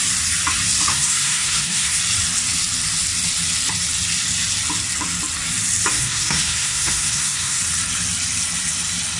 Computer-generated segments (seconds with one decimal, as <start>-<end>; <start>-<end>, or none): 0.9-2.0; 5.9-7.6